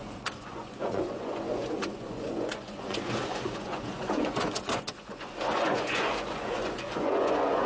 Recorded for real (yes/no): no